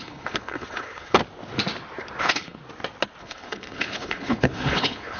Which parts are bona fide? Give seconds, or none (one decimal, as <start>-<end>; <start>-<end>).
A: 1.2-2.2; 2.6-3.2